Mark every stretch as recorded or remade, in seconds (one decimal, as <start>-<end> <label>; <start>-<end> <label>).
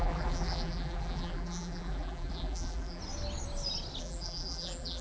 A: 0.0-3.0 remade; 3.0-4.0 recorded; 4.0-5.0 remade